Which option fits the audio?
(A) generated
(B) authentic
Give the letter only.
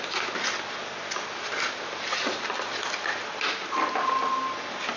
B